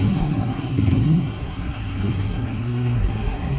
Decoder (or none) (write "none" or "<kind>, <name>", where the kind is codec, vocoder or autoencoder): codec, SNAC